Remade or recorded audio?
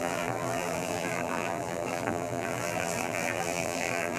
remade